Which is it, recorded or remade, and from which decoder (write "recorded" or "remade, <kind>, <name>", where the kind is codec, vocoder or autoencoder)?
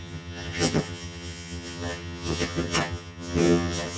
remade, vocoder, HiFi-GAN